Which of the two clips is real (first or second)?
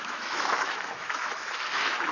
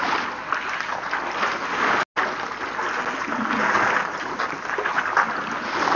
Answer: second